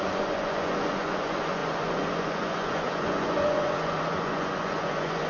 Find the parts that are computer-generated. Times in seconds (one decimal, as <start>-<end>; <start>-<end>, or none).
0.0-5.3